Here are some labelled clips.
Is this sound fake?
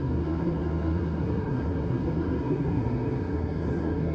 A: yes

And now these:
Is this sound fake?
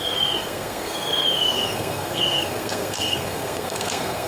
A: yes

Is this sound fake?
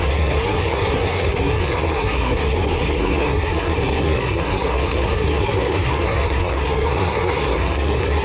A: yes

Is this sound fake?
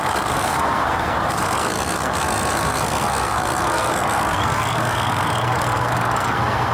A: yes